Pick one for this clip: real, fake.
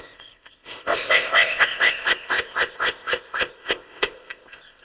fake